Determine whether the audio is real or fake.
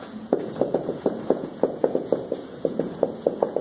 fake